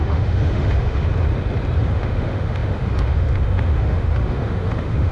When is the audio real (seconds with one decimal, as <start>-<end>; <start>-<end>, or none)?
1.1-1.8